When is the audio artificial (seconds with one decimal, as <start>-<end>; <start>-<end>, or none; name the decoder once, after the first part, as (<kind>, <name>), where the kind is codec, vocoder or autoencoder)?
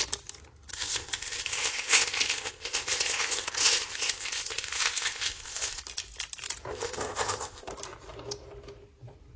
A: 0.7-5.8 (codec, ZipCodec); 6.7-7.7